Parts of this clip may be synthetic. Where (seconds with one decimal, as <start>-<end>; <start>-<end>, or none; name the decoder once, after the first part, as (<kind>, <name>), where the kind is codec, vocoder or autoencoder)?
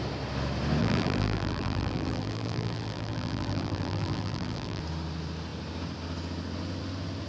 0.8-4.8 (vocoder, BigVGAN v2)